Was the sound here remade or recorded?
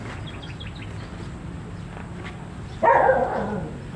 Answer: recorded